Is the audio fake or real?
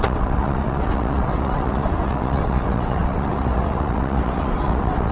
fake